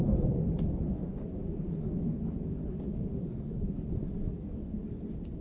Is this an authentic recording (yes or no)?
yes